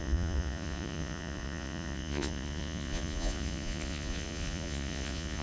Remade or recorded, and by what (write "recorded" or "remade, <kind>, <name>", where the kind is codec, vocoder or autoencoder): remade, vocoder, Vocos